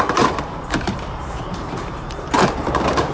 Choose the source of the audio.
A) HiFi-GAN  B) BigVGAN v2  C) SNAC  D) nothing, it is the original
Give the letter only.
B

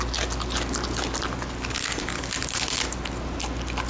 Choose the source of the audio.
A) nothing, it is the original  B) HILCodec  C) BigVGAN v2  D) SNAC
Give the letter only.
A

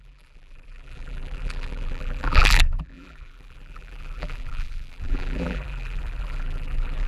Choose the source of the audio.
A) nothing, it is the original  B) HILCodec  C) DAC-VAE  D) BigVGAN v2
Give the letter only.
D